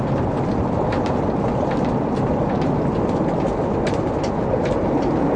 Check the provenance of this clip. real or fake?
real